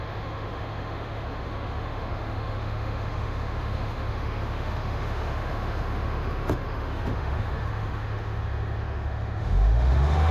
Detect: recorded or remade remade